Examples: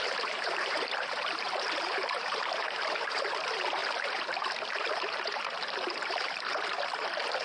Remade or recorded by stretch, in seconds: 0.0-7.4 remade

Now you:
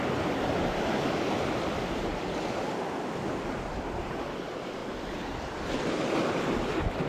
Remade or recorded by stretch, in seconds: 0.0-7.1 recorded

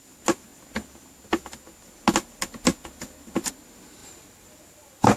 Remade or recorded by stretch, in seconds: 0.0-4.0 recorded; 4.0-5.2 remade